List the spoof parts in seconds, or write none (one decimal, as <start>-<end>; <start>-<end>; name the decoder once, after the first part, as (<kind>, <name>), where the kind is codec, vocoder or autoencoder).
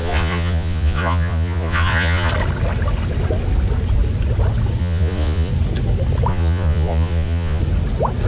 0.0-2.3 (vocoder, Vocos); 4.8-5.5; 6.3-7.6